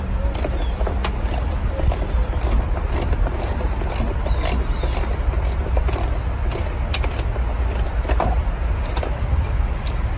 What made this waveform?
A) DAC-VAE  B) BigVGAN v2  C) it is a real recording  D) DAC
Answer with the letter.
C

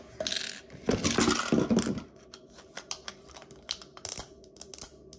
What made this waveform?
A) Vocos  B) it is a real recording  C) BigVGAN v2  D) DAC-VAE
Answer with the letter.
B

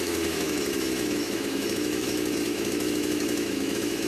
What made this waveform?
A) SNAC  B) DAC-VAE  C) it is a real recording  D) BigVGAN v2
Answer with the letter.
B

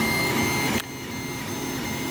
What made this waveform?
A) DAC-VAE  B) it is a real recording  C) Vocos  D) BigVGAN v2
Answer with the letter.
B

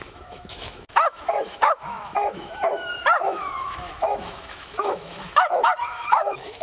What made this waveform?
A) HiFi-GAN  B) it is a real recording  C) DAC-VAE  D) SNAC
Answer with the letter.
C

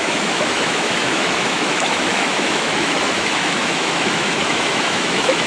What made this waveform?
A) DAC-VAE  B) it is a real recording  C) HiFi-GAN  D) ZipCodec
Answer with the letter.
A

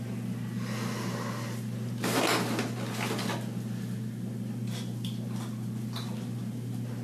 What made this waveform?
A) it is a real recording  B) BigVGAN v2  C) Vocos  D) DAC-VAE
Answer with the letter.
A